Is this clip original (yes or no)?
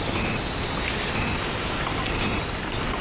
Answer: yes